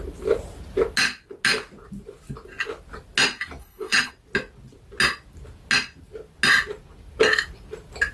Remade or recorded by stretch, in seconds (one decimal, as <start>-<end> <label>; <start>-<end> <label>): 0.0-3.6 recorded; 3.6-4.1 remade; 4.1-8.1 recorded